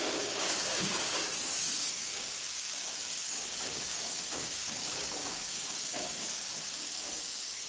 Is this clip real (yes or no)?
no